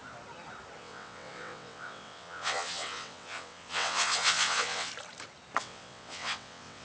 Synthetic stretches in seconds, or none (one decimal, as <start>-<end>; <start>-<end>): 0.8-4.9; 5.6-6.8